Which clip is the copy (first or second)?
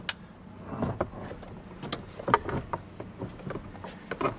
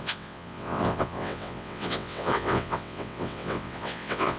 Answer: second